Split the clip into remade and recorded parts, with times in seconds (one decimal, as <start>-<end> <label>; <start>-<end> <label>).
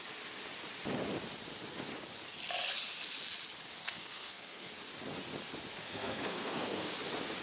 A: 0.0-3.8 recorded; 3.8-4.7 remade; 4.7-5.8 recorded; 5.8-6.9 remade; 6.9-7.4 recorded